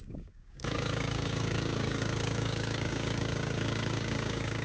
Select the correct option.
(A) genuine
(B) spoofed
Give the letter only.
B